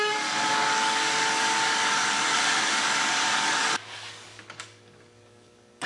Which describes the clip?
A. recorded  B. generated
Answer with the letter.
B